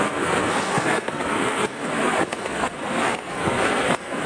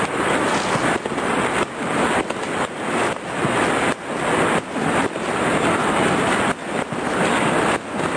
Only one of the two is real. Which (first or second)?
second